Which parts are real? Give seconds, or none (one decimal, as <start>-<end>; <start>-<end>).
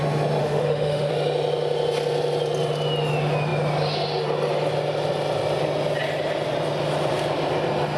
0.0-0.4; 1.1-8.0